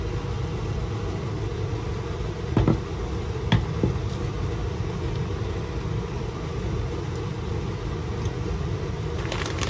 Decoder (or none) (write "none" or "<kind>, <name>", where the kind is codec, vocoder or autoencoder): none